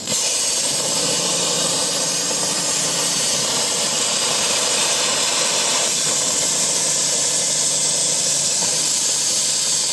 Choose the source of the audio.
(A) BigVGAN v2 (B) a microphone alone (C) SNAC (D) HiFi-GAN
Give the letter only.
A